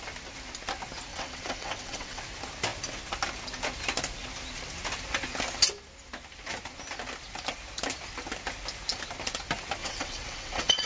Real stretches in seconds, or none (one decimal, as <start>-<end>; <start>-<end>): 0.0-1.1; 2.2-9.8